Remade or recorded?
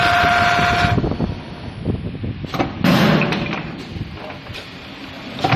recorded